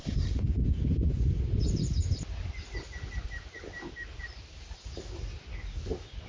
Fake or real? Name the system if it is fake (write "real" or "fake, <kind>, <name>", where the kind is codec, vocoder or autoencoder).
real